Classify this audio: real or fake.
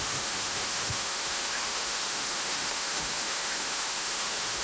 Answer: fake